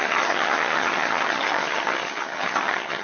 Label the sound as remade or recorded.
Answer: remade